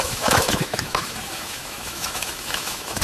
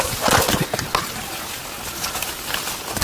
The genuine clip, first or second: second